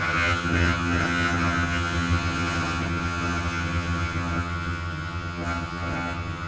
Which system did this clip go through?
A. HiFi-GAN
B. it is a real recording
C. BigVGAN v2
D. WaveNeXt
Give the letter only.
A